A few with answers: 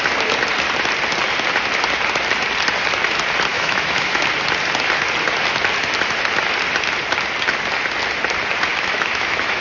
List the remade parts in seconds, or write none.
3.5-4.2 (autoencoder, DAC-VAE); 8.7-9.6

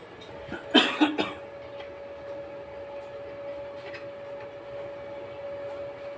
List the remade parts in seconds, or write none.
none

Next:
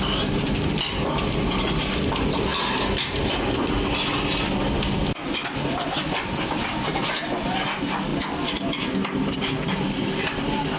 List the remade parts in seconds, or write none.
none